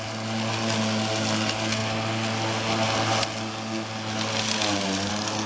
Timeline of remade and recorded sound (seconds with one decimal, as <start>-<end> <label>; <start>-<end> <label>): 0.0-5.5 recorded